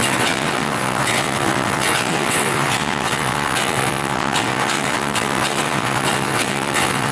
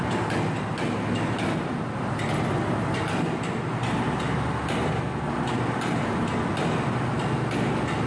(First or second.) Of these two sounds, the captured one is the second